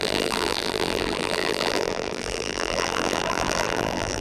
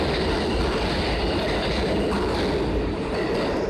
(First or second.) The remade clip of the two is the first